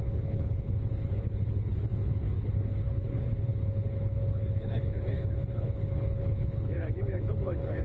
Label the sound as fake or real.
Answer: fake